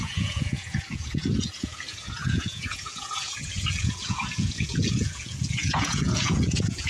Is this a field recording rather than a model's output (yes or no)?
no